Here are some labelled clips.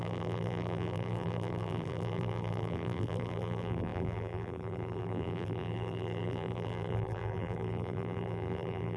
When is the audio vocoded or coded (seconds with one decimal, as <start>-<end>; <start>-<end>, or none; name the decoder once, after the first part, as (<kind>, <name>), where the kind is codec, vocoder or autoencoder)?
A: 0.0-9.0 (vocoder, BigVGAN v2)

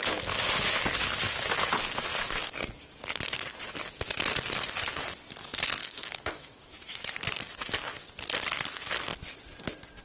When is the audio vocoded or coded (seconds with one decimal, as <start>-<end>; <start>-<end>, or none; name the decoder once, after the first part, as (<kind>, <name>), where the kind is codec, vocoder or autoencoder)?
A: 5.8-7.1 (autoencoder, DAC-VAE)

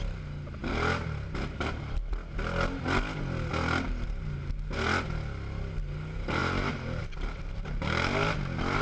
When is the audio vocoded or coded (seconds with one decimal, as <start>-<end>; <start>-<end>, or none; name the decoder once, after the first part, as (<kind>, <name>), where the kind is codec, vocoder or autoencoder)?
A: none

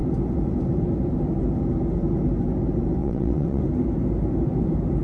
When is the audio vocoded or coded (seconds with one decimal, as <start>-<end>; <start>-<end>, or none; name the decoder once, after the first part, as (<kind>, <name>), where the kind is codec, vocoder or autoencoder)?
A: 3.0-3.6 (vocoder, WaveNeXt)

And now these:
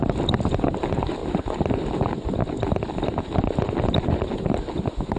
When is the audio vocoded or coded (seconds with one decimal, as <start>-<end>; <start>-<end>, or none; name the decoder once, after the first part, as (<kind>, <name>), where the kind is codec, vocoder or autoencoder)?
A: 0.6-1.2 (vocoder, BigVGAN v2); 4.3-5.2

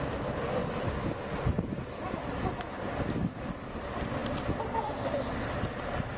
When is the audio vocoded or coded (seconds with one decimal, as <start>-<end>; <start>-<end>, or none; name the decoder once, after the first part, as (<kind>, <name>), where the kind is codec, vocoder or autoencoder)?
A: none

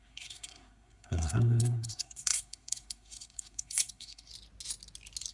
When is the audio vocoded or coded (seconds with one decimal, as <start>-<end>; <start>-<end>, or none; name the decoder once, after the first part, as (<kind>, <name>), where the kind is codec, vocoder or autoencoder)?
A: 0.0-4.3 (codec, SNAC)